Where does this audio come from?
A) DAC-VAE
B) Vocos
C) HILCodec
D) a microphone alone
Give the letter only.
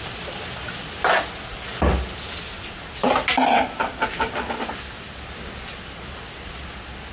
D